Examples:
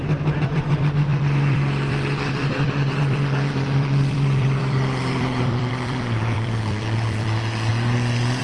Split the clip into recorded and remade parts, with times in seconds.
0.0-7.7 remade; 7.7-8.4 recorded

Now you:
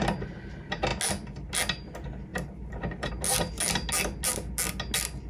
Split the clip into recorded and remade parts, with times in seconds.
0.0-2.3 recorded; 2.3-3.1 remade; 3.1-5.3 recorded

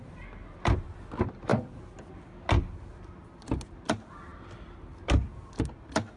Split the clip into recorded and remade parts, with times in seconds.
0.0-0.4 recorded; 0.4-1.1 remade; 1.1-1.5 recorded; 1.5-2.1 remade; 2.1-4.3 recorded; 4.3-4.9 remade; 4.9-6.2 recorded